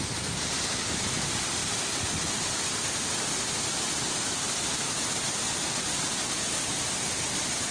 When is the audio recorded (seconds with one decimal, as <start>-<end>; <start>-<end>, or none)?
0.0-7.7